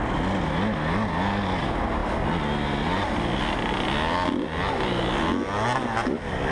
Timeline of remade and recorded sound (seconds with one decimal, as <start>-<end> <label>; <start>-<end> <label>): 0.0-6.5 recorded